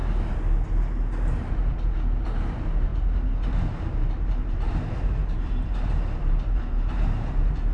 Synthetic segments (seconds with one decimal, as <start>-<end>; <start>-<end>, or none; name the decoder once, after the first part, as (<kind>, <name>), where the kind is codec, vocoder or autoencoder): 1.5-7.7 (vocoder, BigVGAN v2)